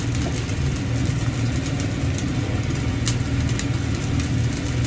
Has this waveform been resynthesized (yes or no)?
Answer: no